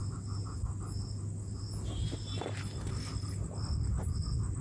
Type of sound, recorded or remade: recorded